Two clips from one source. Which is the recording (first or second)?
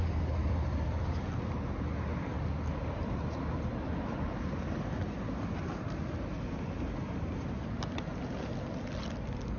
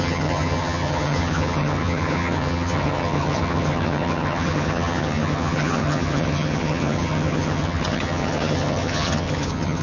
first